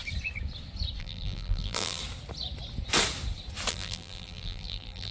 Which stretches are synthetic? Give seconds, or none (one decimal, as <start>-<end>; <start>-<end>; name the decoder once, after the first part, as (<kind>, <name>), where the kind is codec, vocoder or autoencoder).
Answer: 1.0-2.0 (vocoder, BigVGAN v2); 3.7-5.1